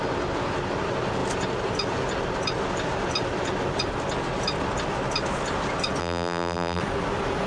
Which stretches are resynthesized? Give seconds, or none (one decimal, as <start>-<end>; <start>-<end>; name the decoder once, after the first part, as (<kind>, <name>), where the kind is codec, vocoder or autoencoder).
6.0-6.8 (vocoder, BigVGAN v2)